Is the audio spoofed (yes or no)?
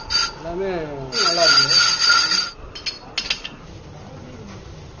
no